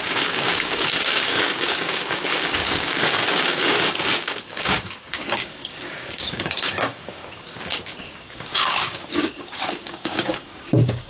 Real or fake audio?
fake